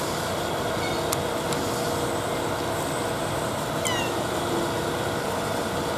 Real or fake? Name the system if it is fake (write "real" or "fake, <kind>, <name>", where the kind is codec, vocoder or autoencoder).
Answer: real